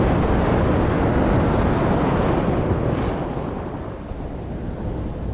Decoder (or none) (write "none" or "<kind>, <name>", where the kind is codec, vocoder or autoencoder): none